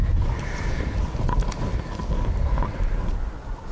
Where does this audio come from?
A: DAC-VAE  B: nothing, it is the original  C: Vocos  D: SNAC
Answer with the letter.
B